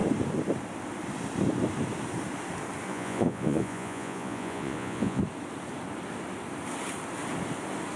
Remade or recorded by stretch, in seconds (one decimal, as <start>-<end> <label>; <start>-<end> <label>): 0.0-2.9 recorded; 2.9-5.2 remade; 5.2-8.0 recorded